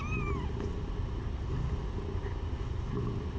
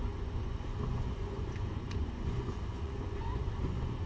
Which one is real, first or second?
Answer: first